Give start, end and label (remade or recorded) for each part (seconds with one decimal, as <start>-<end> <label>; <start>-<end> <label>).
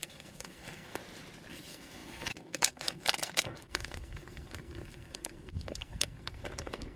0.0-1.0 remade; 1.0-1.5 recorded; 1.5-7.0 remade